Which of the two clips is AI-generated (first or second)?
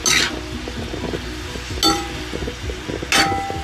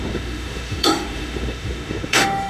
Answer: second